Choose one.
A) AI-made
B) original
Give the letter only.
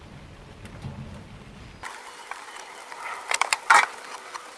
A